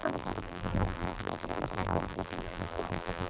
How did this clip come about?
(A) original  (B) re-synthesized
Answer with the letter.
B